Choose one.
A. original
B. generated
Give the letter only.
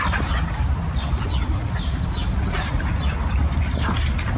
A